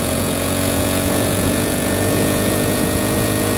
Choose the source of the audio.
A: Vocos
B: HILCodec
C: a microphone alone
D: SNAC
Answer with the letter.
A